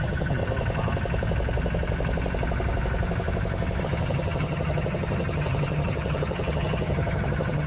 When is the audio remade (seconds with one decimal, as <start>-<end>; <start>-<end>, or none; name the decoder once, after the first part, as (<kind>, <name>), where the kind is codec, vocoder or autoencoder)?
0.0-0.4 (vocoder, HiFi-GAN); 3.8-7.7